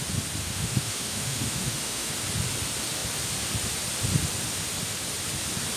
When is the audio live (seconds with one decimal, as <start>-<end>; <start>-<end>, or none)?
0.0-0.4; 2.1-5.8